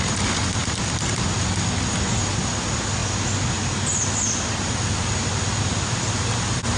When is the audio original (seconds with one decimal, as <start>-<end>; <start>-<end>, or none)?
0.0-6.8